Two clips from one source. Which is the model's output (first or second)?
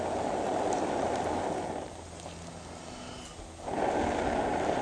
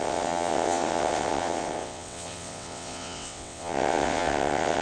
second